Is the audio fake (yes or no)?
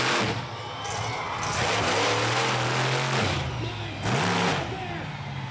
no